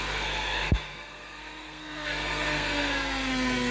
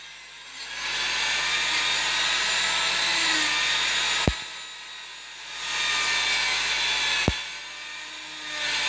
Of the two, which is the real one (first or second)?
second